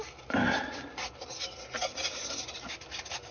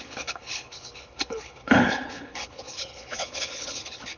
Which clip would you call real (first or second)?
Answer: first